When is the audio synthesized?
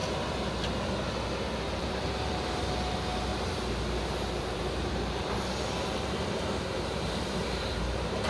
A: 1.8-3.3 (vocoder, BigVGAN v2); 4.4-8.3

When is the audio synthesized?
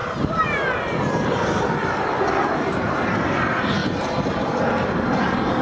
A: 0.0-1.0 (vocoder, BigVGAN v2); 2.7-3.2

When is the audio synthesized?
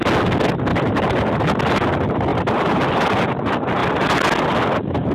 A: 0.7-1.3 (vocoder, BigVGAN v2); 2.3-3.2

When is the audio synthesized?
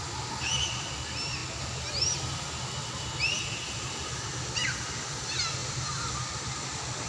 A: 5.6-6.2 (vocoder, BigVGAN v2)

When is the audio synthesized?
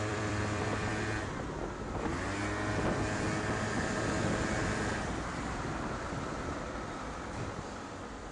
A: 0.0-0.9 (vocoder, BigVGAN v2); 3.6-8.3